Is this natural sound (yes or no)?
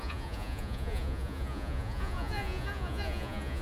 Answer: no